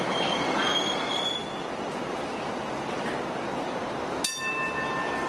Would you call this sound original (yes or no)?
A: yes